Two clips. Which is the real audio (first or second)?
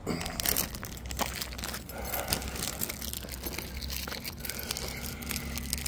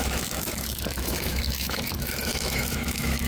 first